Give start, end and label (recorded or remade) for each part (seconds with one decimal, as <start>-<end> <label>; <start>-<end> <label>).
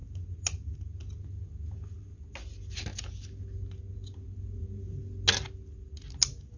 0.0-6.6 recorded